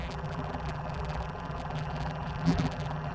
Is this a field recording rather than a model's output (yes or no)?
no